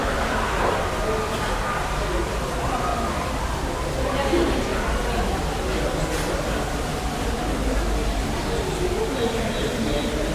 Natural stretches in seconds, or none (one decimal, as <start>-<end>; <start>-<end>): 4.7-9.3